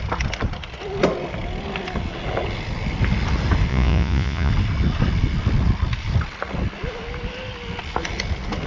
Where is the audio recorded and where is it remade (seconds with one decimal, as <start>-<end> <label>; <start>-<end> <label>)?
0.0-3.7 recorded; 3.7-4.5 remade; 4.5-8.7 recorded